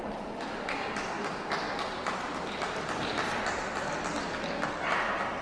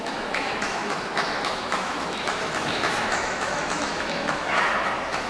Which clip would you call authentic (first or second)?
first